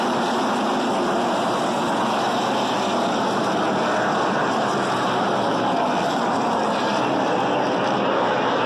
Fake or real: real